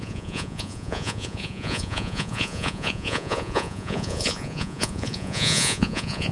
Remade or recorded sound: remade